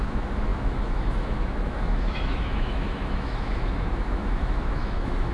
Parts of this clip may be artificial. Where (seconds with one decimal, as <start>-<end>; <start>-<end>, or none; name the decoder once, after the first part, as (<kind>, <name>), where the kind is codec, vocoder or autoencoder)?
0.0-5.3 (autoencoder, DAC-VAE)